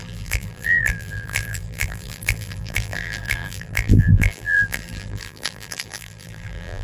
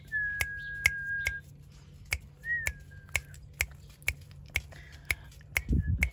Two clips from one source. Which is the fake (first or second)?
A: first